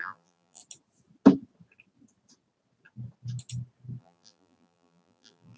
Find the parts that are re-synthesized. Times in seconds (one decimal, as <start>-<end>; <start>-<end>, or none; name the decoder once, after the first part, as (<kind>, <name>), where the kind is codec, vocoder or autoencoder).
0.0-0.6 (vocoder, BigVGAN v2); 4.0-5.6

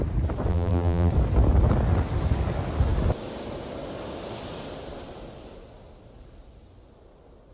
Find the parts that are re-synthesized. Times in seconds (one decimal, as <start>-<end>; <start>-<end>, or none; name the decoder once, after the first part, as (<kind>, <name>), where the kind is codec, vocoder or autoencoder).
0.5-1.1 (vocoder, BigVGAN v2)

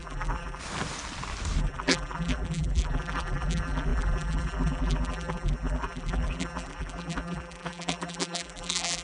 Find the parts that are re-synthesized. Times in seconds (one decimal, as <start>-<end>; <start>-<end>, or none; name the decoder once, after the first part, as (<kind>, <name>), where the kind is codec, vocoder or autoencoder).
0.0-0.6 (vocoder, BigVGAN v2); 1.6-9.0

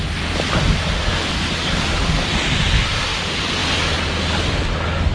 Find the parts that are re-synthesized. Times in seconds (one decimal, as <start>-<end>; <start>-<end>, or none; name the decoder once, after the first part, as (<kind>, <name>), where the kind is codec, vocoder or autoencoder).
none

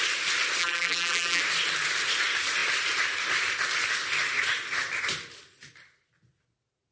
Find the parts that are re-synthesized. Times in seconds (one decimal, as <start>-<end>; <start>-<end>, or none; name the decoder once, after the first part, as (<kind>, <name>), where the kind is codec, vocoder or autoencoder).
0.6-1.4 (vocoder, BigVGAN v2)

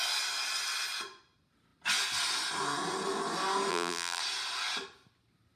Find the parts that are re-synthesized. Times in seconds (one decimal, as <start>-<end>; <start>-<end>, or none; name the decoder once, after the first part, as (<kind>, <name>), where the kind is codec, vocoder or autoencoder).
3.7-4.2 (vocoder, BigVGAN v2)